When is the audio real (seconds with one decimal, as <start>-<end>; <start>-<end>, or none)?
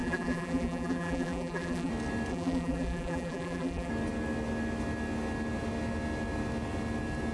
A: 1.9-2.3; 3.9-7.3